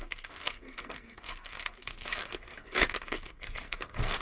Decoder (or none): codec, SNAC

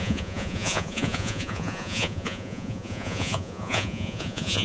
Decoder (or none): vocoder, Vocos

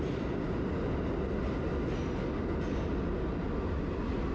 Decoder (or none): none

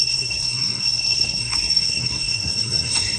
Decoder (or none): codec, SNAC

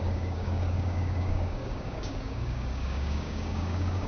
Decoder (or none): codec, DAC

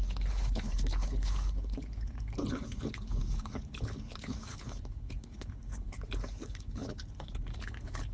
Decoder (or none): codec, HILCodec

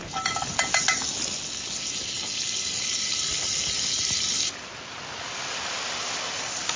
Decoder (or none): none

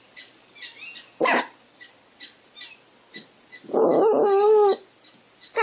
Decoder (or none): none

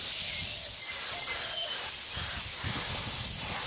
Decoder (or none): none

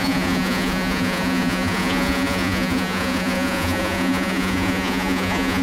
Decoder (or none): vocoder, Vocos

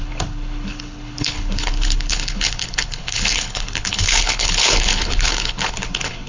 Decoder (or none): codec, HILCodec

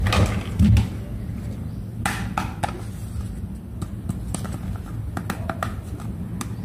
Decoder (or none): none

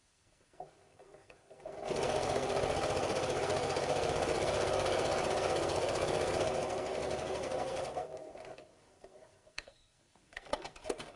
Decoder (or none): codec, SNAC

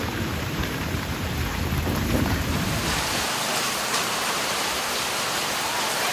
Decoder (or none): vocoder, BigVGAN v2